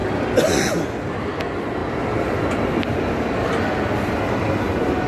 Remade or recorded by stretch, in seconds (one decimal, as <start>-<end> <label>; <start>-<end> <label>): 0.0-5.1 recorded